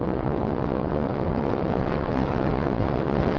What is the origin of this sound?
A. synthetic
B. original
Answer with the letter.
A